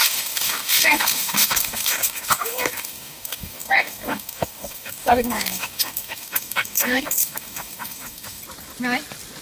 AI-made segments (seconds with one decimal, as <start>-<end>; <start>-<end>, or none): 0.0-8.4

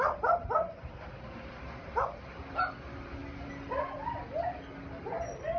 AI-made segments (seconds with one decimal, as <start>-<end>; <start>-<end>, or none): none

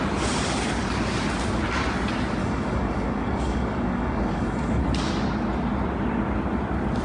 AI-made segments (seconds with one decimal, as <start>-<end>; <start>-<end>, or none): 2.4-4.8

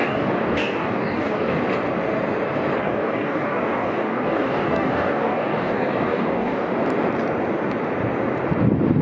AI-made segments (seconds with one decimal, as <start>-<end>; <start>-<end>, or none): 0.0-1.6; 2.8-6.7

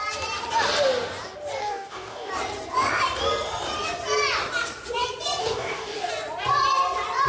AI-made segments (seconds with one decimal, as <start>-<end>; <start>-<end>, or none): 1.6-2.3; 5.4-6.1

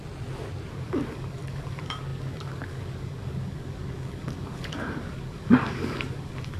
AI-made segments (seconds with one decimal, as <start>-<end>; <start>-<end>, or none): 0.7-6.6

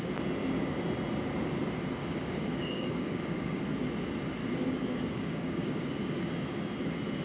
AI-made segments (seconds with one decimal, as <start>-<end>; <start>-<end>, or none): 2.0-3.6; 4.4-5.9